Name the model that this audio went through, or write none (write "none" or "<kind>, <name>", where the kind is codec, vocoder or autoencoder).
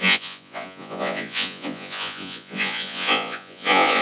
vocoder, Vocos